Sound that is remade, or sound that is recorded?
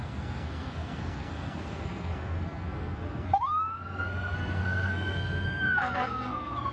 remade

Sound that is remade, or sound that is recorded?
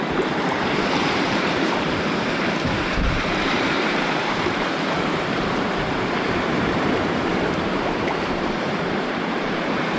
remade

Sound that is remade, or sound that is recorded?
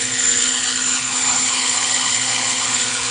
remade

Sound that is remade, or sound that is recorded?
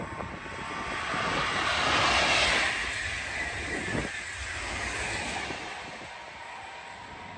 recorded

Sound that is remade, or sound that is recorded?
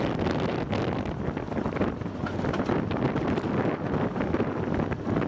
recorded